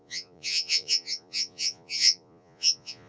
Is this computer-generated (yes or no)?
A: yes